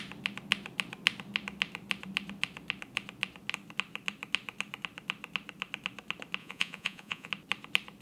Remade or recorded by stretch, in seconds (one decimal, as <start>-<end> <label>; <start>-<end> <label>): 0.0-6.4 recorded; 6.4-7.3 remade; 7.3-8.0 recorded